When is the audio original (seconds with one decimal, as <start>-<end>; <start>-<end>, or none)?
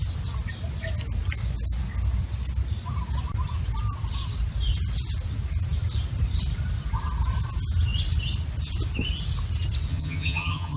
0.0-9.9